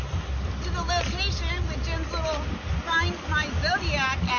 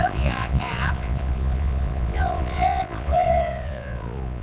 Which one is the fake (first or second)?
second